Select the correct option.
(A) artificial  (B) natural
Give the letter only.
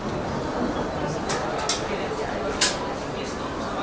B